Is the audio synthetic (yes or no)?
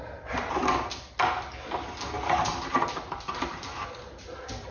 no